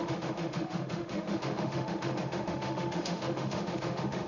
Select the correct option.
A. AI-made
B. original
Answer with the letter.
A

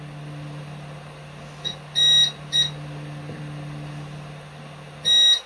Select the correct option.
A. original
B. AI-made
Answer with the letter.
A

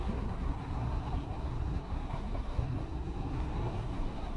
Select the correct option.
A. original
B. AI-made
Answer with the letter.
B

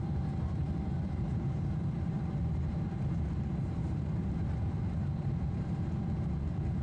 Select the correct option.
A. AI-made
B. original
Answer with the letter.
A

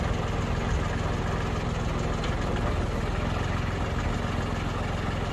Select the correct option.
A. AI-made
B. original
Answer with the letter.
B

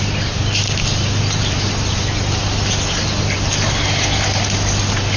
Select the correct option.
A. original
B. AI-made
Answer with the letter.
A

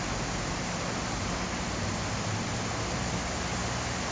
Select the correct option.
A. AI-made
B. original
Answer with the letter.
B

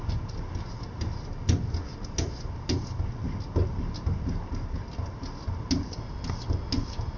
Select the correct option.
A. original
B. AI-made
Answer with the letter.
A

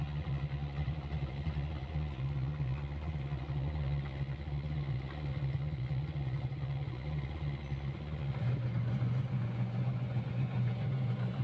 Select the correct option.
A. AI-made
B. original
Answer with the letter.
A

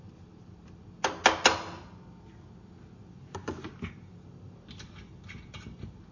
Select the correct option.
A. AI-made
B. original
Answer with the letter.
B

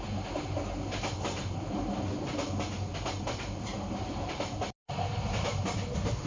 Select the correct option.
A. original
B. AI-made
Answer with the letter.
A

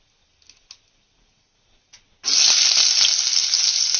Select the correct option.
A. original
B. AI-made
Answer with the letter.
A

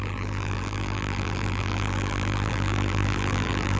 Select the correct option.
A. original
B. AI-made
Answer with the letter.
B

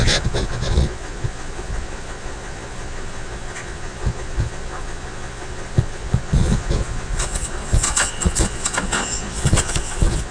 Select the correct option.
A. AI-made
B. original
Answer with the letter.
A